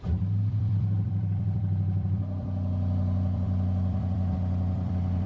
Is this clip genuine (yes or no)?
no